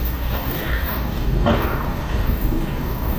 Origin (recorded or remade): remade